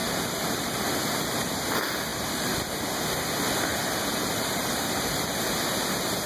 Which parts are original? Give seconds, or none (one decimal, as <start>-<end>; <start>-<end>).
0.8-2.1; 2.7-3.7; 5.6-6.3